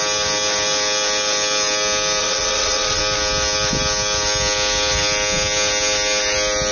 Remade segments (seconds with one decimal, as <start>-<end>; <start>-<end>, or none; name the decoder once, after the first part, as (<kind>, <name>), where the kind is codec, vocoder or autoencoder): 2.2-3.0 (vocoder, WaveNeXt)